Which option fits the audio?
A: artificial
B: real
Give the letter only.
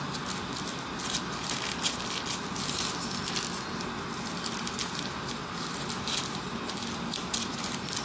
B